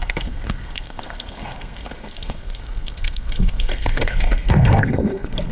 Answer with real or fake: fake